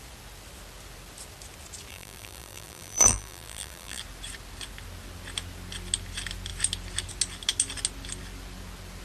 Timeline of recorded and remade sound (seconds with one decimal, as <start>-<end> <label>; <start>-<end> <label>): 0.0-1.9 recorded; 1.9-4.0 remade; 4.0-9.0 recorded